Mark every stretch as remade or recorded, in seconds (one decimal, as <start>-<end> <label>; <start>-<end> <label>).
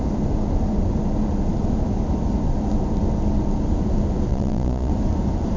0.0-4.3 recorded; 4.3-4.9 remade; 4.9-5.6 recorded